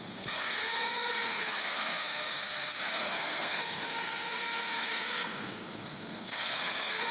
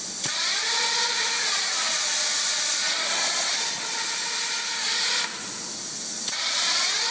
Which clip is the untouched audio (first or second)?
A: second